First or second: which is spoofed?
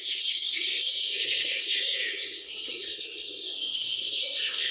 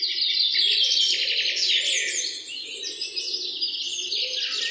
first